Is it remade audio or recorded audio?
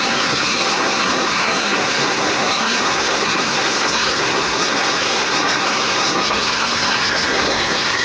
remade